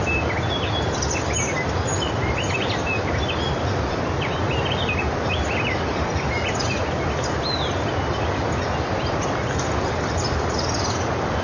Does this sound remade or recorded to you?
recorded